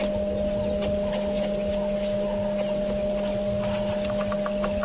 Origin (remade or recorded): recorded